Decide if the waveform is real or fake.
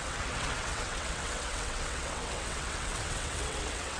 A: fake